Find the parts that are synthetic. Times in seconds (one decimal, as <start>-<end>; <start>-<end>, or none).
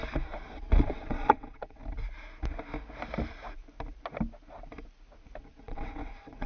0.5-1.8; 5.4-6.5